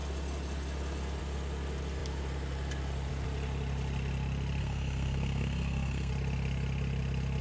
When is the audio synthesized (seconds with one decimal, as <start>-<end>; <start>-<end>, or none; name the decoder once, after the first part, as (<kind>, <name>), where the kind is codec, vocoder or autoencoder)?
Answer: 4.6-6.1 (codec, SNAC)